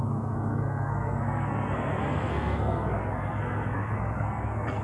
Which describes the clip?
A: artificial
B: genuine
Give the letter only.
A